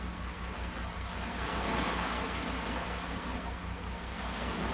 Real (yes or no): no